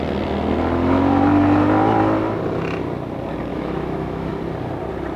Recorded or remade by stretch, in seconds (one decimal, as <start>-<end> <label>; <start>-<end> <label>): 0.0-3.5 recorded; 3.5-4.3 remade; 4.3-5.2 recorded